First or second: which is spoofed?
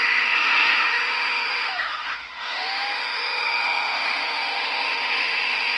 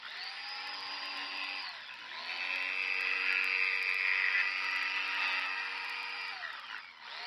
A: first